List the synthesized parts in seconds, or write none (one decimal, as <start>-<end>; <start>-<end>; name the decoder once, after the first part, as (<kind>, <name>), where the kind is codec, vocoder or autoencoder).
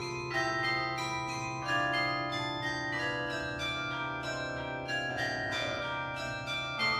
5.1-5.8 (vocoder, Vocos)